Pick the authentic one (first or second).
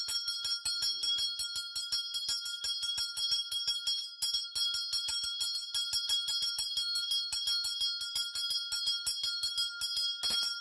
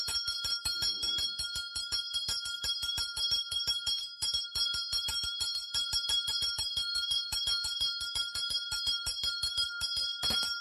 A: first